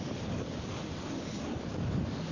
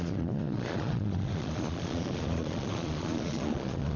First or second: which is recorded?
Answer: first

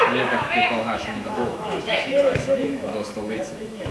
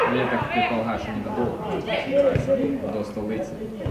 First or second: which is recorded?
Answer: second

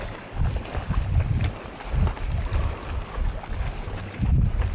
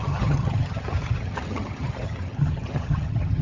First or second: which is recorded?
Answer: first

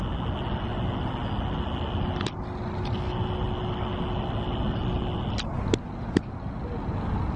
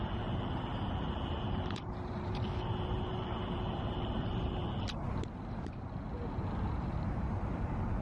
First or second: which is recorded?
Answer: first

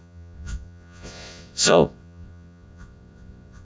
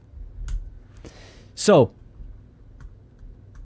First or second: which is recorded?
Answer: second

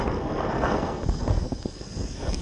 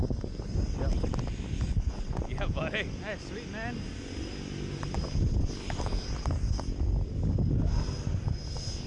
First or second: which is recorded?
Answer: second